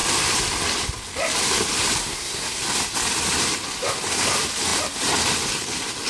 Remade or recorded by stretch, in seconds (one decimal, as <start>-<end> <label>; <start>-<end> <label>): 0.0-2.0 recorded; 2.0-2.6 remade; 2.6-6.1 recorded

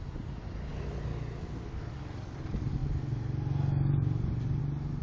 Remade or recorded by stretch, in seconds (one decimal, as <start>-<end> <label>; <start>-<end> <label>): 0.0-5.0 recorded

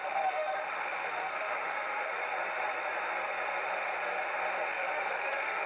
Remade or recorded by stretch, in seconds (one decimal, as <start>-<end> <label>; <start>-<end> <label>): 0.0-2.2 remade; 2.2-4.7 recorded; 4.7-5.7 remade

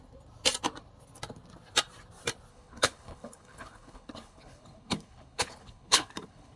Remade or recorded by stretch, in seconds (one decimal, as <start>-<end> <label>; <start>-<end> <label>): 0.0-2.5 recorded; 2.5-6.6 remade

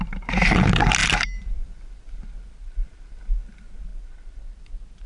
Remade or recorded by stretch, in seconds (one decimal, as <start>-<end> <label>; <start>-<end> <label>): 0.0-1.0 recorded; 1.0-3.5 remade; 3.5-3.9 recorded; 3.9-5.1 remade

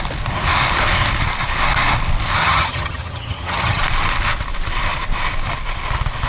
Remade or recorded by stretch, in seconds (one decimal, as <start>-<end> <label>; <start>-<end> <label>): 0.0-2.4 recorded; 2.4-3.8 remade; 3.8-6.3 recorded